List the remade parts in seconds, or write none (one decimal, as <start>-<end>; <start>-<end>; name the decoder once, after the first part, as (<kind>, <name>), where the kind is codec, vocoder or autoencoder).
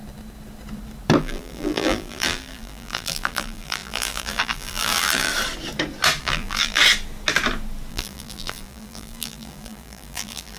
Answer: 1.2-5.3 (vocoder, BigVGAN v2); 6.2-6.8; 7.9-10.6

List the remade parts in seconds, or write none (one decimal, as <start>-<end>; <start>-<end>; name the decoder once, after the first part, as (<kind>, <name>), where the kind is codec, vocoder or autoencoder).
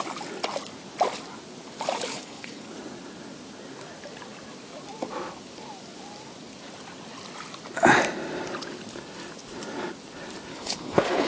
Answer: 2.1-2.7 (codec, HILCodec); 10.5-11.3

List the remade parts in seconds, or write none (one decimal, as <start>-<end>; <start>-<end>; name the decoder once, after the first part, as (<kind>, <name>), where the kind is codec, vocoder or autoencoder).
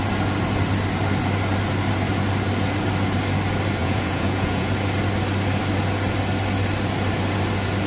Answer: 3.8-4.7 (vocoder, Vocos)